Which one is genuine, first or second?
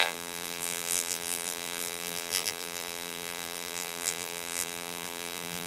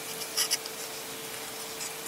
second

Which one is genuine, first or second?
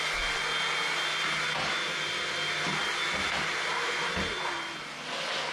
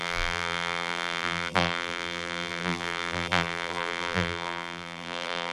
first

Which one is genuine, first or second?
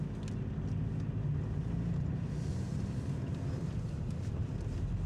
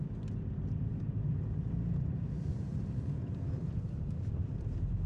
first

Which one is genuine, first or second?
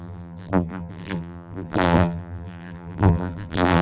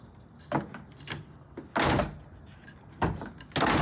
second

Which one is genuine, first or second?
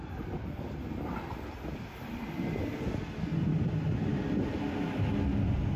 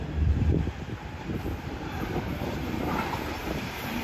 first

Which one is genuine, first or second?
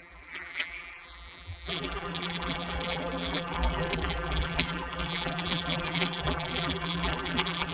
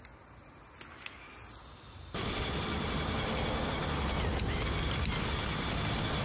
second